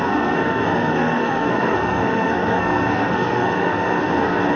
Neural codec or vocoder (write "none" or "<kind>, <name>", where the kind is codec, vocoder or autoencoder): codec, SNAC